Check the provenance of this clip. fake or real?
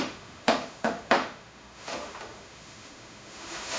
fake